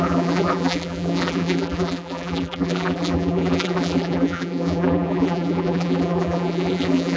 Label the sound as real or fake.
fake